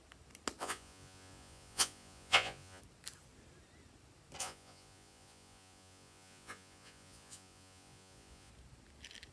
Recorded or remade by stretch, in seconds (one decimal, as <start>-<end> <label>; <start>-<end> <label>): 0.0-0.6 recorded; 0.6-2.8 remade; 2.8-4.4 recorded; 4.4-8.5 remade; 8.5-9.3 recorded